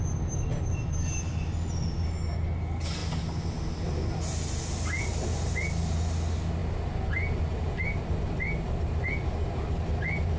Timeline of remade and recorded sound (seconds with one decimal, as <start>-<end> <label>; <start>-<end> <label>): 0.0-10.4 recorded